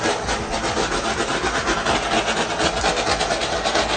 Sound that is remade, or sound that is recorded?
recorded